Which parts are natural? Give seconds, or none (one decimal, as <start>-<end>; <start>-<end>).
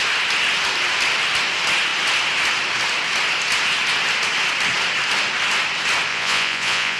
0.0-6.1